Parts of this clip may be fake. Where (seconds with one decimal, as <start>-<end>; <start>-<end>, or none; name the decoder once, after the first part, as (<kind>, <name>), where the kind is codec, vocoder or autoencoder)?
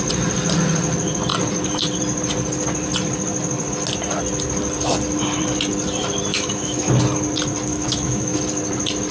6.3-6.9 (autoencoder, DAC-VAE); 7.7-8.4